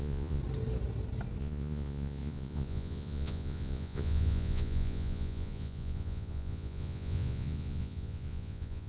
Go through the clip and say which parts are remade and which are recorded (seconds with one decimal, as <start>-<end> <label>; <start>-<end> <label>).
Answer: 0.0-0.4 remade; 0.4-1.4 recorded; 1.4-8.9 remade